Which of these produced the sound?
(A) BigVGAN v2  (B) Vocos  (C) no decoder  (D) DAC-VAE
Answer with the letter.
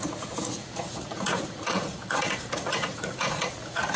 B